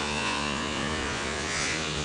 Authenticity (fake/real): fake